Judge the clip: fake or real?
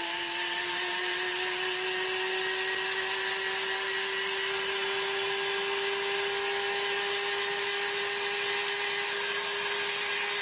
real